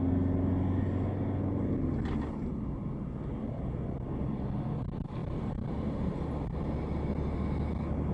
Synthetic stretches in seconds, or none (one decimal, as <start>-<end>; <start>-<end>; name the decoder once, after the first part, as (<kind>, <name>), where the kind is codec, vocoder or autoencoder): 5.2-6.2 (vocoder, BigVGAN v2)